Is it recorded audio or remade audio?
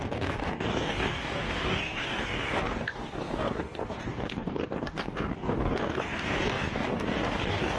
remade